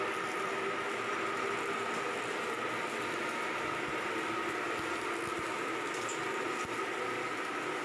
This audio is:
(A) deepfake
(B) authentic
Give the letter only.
B